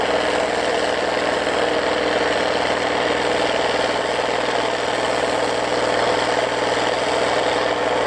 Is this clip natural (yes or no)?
yes